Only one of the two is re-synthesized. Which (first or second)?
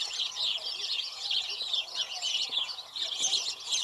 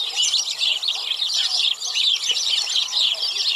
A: first